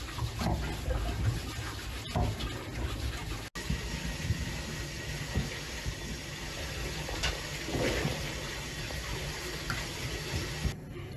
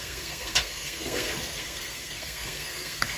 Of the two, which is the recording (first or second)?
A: first